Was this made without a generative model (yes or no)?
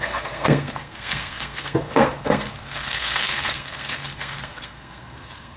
no